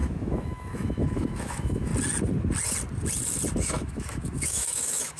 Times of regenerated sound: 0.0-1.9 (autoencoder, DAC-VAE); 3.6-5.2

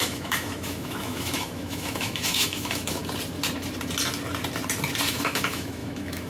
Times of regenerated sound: 0.0-3.0 (autoencoder, DAC-VAE); 5.1-6.3

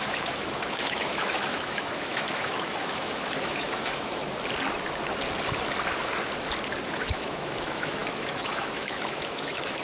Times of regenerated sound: 0.0-4.2 (autoencoder, DAC-VAE); 6.9-9.8

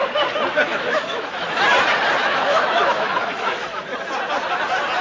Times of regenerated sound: 0.7-1.6 (autoencoder, DAC-VAE); 2.2-3.8

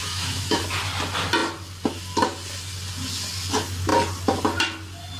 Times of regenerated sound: 0.0-0.6 (autoencoder, DAC-VAE)

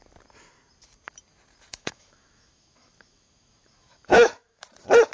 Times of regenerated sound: 1.7-4.6 (autoencoder, DAC-VAE)

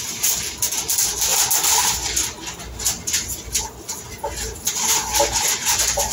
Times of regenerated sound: none